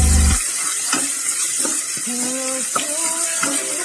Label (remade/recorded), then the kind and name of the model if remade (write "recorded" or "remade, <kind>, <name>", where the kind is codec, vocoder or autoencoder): recorded